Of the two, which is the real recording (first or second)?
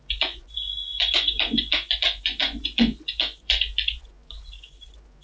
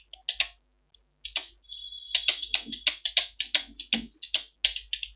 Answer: second